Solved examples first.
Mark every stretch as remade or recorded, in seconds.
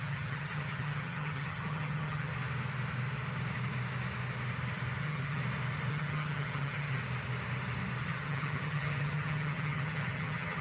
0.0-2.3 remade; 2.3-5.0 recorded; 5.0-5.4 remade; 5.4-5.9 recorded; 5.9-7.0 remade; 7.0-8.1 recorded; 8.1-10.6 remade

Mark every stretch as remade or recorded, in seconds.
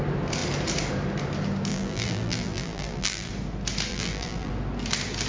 0.0-1.7 recorded; 1.7-3.3 remade; 3.3-3.9 recorded; 3.9-4.5 remade; 4.5-5.3 recorded